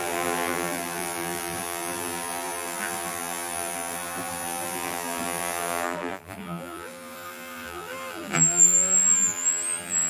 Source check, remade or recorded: remade